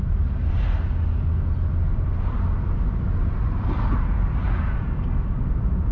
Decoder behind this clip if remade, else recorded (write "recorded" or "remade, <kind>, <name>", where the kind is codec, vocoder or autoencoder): recorded